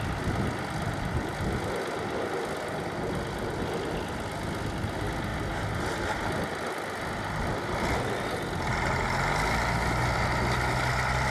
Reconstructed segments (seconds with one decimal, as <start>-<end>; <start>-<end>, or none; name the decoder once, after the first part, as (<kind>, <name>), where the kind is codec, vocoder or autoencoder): none